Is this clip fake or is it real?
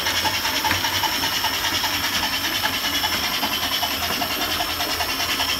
real